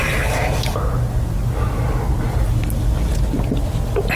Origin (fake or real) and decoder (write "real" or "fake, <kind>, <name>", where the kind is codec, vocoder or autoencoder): real